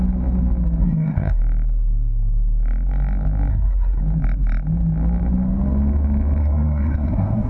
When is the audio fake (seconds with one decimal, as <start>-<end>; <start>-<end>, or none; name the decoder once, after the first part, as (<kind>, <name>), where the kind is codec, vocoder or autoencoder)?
0.8-1.4 (codec, SNAC); 3.5-4.0; 6.4-7.5